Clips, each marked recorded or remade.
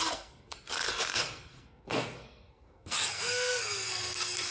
remade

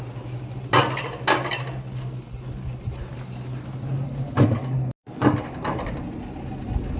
recorded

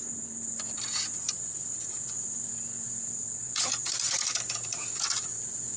remade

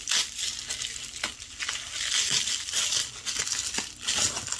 recorded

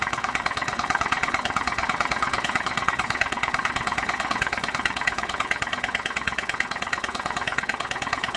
remade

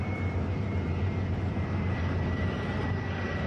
remade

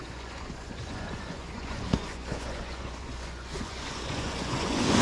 remade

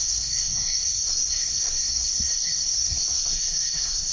remade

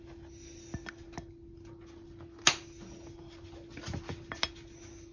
recorded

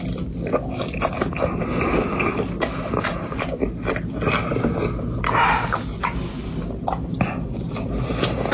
recorded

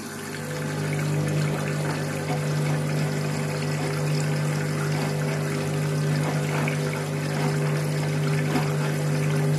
recorded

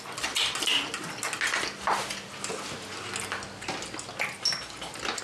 recorded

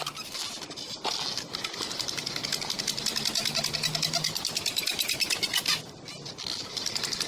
recorded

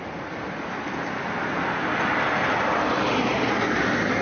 recorded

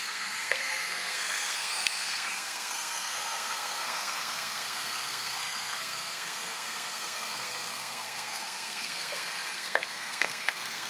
remade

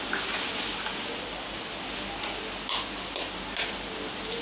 recorded